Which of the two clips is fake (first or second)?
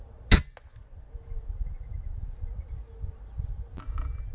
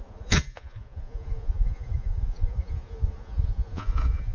second